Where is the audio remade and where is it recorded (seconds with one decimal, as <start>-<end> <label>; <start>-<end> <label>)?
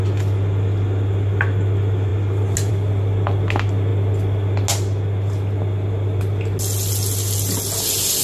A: 0.0-8.2 recorded